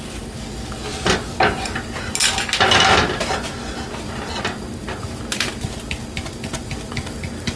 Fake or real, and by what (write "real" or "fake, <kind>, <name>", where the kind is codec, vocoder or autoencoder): real